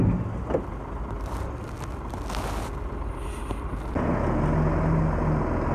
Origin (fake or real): real